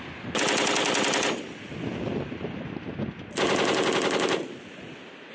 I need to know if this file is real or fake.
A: real